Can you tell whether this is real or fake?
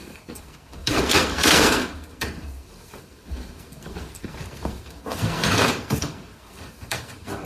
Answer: fake